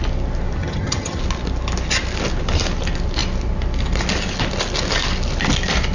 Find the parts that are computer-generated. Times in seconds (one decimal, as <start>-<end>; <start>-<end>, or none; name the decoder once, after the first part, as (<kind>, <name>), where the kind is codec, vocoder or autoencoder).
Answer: 0.6-1.2 (vocoder, HiFi-GAN)